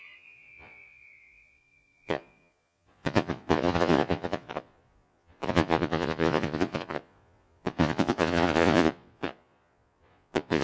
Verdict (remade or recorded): remade